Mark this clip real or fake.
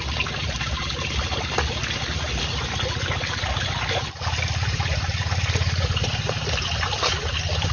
real